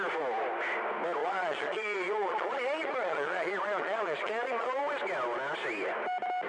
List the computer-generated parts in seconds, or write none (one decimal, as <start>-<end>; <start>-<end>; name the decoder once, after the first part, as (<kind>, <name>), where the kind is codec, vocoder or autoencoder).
1.2-4.8 (vocoder, Vocos)